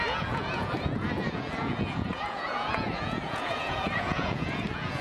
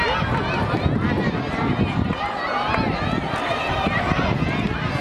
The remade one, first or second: first